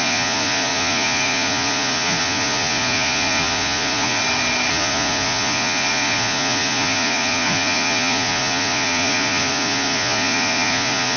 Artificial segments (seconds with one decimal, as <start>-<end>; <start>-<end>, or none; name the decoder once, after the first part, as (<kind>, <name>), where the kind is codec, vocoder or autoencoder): 0.0-4.2 (vocoder, Vocos); 4.7-11.2